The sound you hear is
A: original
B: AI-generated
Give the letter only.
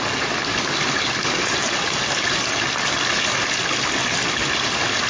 A